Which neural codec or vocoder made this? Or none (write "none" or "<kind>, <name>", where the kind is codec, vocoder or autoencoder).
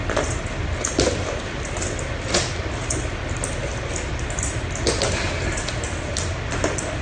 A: none